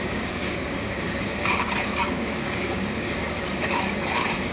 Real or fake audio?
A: fake